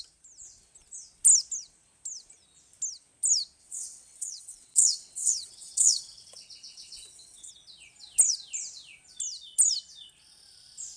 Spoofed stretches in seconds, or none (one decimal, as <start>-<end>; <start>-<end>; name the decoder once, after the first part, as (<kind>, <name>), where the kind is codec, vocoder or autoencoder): 3.6-7.5 (vocoder, WaveNeXt)